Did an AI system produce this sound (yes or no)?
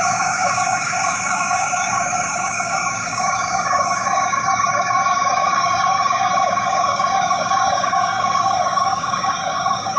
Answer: yes